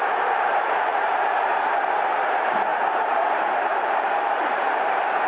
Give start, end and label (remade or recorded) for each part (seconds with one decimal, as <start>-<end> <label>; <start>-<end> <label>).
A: 0.0-5.3 remade